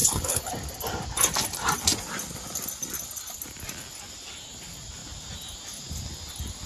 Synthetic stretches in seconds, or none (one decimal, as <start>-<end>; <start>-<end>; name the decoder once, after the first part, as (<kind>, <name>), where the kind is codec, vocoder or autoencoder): 0.0-0.5 (codec, HILCodec)